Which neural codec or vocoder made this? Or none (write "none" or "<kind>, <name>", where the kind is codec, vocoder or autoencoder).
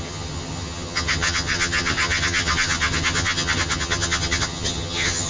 vocoder, HiFi-GAN